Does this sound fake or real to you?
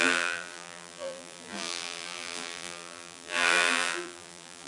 fake